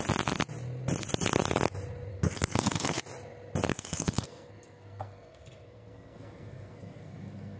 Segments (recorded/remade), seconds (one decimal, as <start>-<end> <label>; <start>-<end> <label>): 0.0-2.1 recorded; 2.1-3.0 remade; 3.0-3.7 recorded; 3.7-7.6 remade